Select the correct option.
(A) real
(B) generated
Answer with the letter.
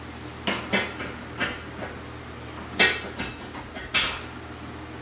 A